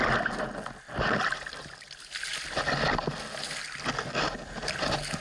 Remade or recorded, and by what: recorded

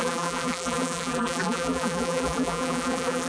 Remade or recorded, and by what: remade, vocoder, BigVGAN v2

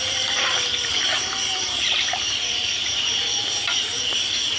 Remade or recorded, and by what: remade, vocoder, BigVGAN v2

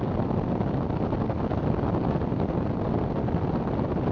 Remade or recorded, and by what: recorded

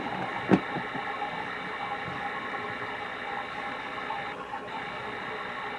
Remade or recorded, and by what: recorded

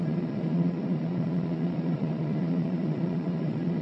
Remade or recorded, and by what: remade, vocoder, Vocos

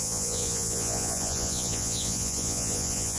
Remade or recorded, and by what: remade, vocoder, Vocos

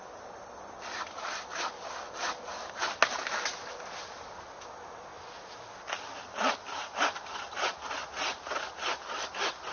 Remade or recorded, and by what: recorded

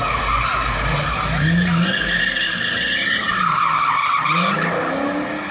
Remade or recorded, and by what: recorded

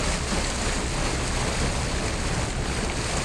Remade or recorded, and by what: recorded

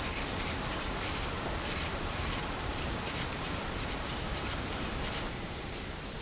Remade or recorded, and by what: remade, vocoder, BigVGAN v2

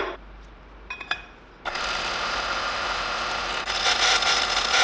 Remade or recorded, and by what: recorded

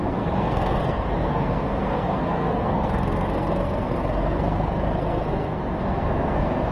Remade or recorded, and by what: remade, codec, SNAC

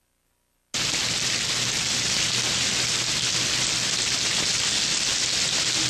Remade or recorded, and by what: recorded